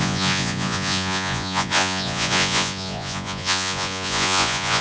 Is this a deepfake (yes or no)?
yes